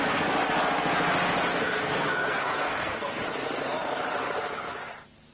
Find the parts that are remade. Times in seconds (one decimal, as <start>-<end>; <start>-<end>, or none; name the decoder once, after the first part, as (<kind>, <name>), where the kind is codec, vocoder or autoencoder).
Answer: 1.5-3.2 (codec, SNAC)